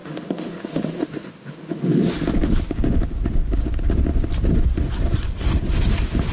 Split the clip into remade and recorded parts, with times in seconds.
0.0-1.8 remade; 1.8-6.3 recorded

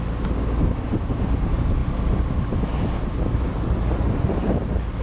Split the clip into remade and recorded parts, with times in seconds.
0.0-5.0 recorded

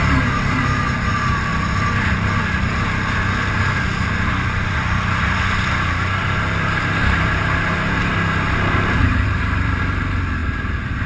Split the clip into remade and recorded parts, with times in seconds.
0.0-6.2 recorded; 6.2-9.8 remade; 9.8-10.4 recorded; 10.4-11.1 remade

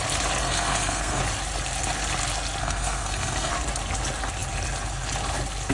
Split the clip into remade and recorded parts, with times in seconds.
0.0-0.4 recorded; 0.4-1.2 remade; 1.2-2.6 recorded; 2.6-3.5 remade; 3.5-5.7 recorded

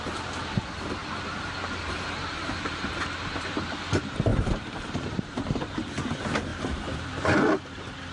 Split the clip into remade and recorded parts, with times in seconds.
0.0-1.0 recorded; 1.0-3.7 remade; 3.7-4.3 recorded; 4.3-5.9 remade; 5.9-6.5 recorded; 6.5-7.4 remade; 7.4-8.1 recorded

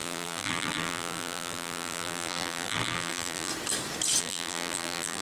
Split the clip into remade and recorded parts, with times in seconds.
0.0-3.5 remade; 3.5-4.2 recorded; 4.2-5.2 remade

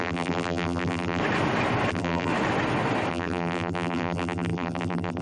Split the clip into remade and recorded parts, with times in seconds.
0.0-1.2 remade; 1.2-1.9 recorded; 1.9-2.3 remade; 2.3-3.1 recorded; 3.1-5.2 remade